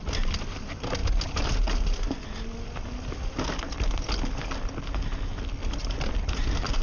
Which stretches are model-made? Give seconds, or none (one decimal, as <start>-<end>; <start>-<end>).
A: none